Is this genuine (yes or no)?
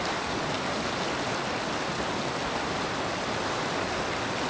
yes